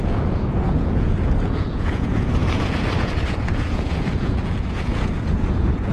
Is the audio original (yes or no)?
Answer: no